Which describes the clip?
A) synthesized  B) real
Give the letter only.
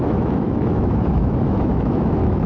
A